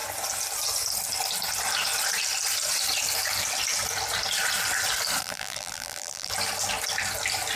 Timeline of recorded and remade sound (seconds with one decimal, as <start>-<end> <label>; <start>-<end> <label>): 0.0-5.2 recorded; 5.2-6.3 remade; 6.3-7.6 recorded